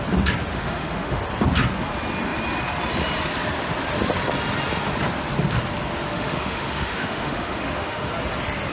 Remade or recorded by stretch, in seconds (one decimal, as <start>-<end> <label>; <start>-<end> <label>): 0.0-0.5 recorded; 0.5-1.2 remade; 1.2-6.1 recorded; 6.1-8.1 remade; 8.1-8.7 recorded